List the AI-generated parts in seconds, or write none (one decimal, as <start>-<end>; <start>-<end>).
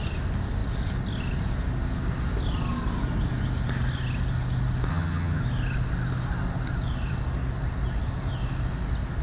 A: 4.9-5.4